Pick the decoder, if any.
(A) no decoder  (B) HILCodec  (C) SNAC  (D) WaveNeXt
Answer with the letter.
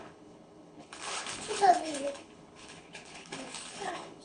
B